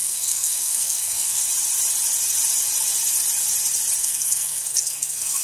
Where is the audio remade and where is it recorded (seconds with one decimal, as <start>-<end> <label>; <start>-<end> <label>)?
0.0-1.4 remade; 1.4-4.0 recorded; 4.0-5.4 remade